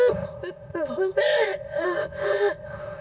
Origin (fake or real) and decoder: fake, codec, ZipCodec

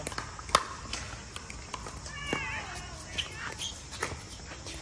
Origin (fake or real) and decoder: real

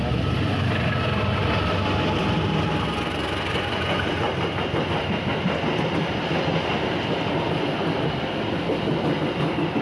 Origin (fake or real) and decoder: real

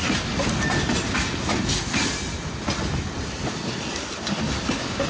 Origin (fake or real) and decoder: real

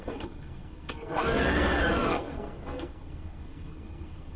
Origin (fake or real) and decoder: fake, codec, SNAC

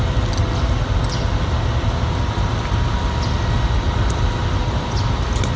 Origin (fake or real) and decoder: real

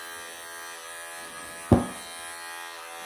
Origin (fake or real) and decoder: real